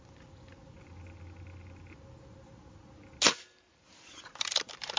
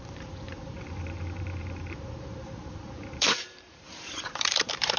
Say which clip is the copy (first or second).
second